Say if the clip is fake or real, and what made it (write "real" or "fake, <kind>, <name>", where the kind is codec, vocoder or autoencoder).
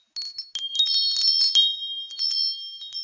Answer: real